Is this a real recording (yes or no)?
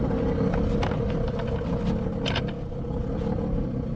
yes